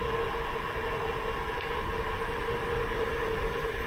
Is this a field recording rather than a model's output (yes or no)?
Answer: yes